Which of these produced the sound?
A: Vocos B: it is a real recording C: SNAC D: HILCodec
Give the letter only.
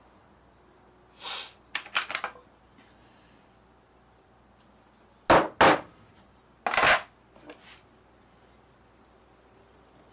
B